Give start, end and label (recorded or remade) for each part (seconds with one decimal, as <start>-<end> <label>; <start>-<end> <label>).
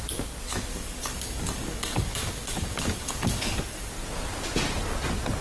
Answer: 0.0-0.7 recorded; 0.7-3.9 remade; 3.9-5.4 recorded